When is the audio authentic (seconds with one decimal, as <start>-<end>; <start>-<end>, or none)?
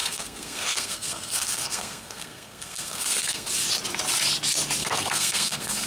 3.5-4.8